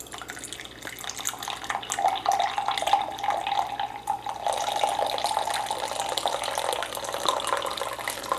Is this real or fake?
real